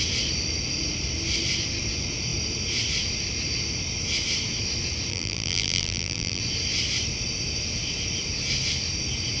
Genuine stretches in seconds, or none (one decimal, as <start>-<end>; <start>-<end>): 0.0-5.1; 6.4-9.4